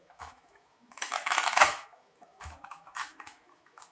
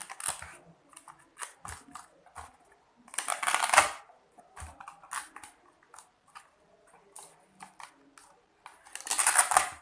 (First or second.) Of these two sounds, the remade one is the first